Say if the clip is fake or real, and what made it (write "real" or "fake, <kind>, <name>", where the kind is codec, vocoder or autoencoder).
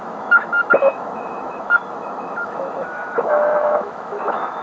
fake, autoencoder, DAC-VAE